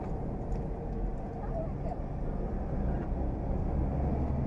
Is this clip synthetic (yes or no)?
no